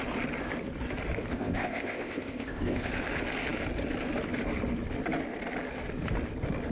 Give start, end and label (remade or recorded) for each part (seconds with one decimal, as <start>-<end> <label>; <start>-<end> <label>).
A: 0.0-1.3 recorded; 1.3-2.9 remade; 2.9-6.7 recorded